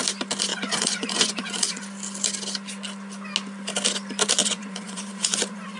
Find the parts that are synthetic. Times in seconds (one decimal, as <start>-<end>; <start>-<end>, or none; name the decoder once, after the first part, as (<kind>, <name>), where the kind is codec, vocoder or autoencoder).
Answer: 0.5-1.8 (vocoder, Vocos); 4.4-5.8